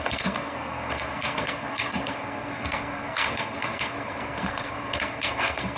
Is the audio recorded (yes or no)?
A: no